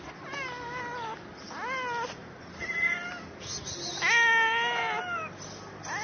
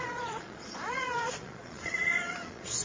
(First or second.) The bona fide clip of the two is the first